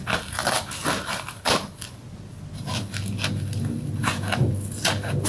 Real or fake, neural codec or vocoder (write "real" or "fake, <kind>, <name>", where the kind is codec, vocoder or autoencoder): real